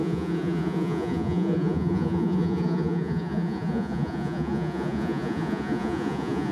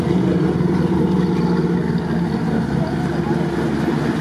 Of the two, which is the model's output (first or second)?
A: first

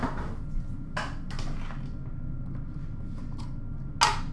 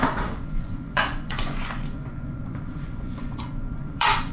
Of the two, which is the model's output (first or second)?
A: second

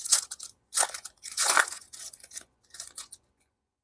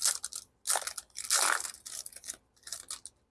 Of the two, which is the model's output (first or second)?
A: first